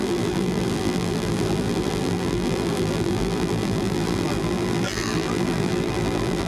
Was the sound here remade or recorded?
remade